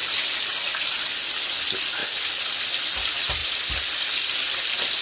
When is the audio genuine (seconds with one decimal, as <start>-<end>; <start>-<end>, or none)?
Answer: 1.1-2.0; 2.7-3.4; 4.1-5.0

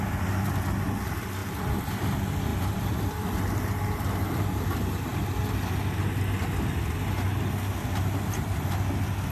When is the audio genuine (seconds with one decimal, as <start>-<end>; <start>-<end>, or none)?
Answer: 0.0-1.4; 1.9-2.5; 3.4-9.3

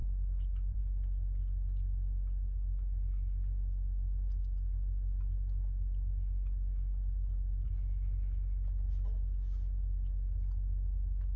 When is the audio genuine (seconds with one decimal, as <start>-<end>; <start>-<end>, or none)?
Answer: 0.8-11.4

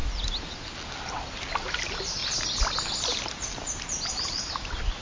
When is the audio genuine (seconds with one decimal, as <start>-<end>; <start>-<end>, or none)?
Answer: 0.0-5.0